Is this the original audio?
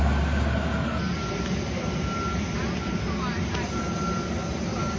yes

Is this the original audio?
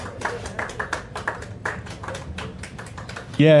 yes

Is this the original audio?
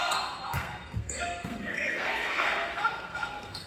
no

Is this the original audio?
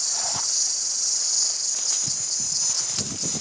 yes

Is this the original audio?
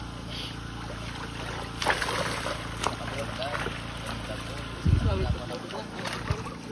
yes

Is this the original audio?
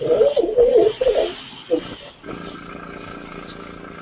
yes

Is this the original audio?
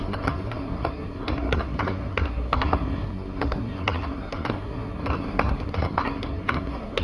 no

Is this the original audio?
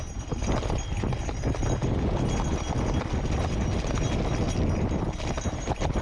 yes